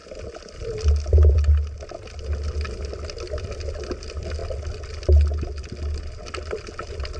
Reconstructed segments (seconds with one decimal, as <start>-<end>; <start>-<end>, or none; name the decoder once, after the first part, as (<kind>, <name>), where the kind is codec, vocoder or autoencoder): none